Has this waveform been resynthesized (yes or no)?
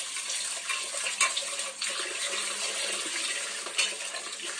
no